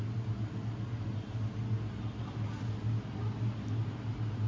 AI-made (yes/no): no